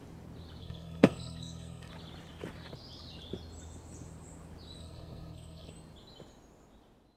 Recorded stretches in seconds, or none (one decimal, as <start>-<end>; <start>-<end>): 0.0-0.6; 1.9-4.8; 5.7-7.2